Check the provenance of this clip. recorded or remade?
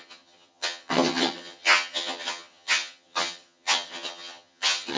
remade